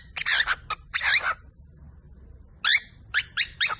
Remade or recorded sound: recorded